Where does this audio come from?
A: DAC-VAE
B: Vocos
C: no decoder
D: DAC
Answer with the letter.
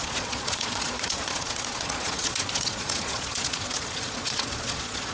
B